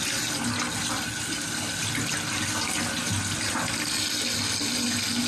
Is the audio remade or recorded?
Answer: recorded